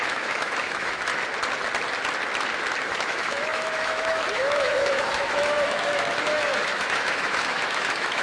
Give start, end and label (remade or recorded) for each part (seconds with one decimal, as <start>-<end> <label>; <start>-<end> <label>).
0.0-1.1 remade; 1.1-2.8 recorded; 2.8-8.2 remade